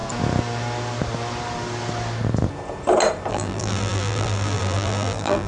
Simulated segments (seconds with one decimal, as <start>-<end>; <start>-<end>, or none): 3.3-5.5